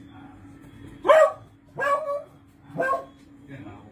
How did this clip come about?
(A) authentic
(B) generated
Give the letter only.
A